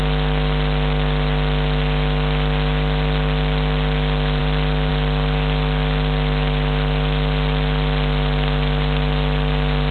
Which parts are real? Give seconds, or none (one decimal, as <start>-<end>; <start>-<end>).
0.0-9.9